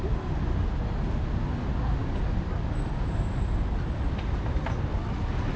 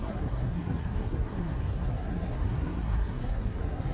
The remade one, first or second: second